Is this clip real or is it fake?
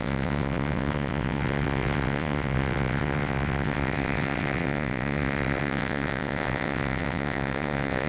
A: fake